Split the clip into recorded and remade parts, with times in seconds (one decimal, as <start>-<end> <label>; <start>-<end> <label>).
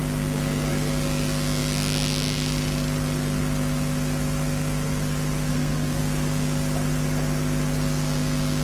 0.0-5.5 recorded; 5.5-6.0 remade; 6.0-8.6 recorded